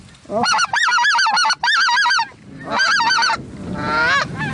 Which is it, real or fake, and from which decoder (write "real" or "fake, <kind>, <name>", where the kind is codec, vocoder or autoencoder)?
real